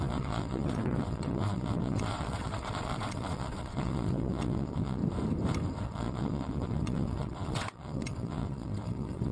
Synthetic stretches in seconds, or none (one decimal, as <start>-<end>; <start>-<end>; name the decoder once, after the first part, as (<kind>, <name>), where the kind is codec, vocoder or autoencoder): 0.0-5.0 (vocoder, WaveNeXt); 5.8-9.3